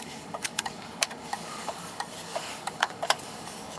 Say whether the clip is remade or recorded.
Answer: remade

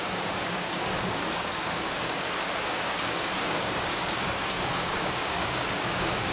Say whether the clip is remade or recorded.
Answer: remade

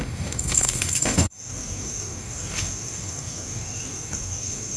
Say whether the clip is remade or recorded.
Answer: remade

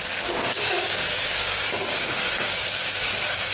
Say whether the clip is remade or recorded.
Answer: remade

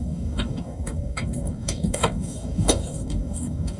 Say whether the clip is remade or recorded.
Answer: remade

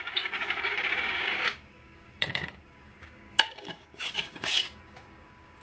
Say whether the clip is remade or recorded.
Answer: remade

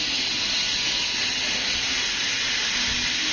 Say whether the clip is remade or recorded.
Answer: recorded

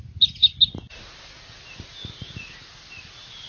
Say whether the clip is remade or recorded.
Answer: recorded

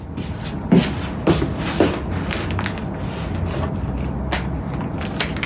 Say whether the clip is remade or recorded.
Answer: recorded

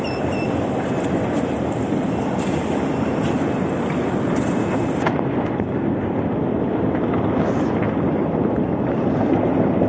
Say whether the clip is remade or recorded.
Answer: recorded